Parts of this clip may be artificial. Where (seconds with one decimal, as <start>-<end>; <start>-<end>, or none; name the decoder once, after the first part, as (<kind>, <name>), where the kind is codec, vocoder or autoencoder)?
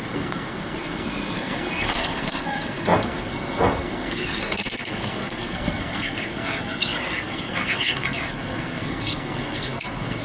0.0-10.2 (codec, SNAC)